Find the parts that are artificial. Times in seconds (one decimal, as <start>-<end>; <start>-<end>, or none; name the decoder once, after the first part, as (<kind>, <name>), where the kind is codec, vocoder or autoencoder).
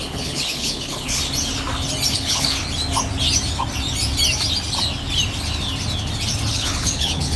0.0-1.2 (codec, HILCodec); 2.1-2.6; 6.5-7.4